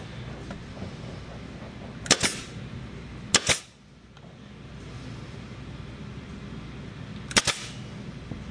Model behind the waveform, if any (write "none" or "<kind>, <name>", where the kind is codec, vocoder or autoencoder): none